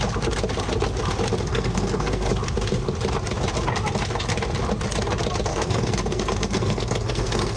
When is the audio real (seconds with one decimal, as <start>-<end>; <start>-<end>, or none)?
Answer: 0.0-1.5; 2.3-5.5